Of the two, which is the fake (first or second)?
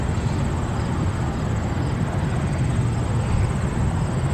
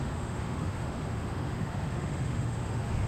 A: second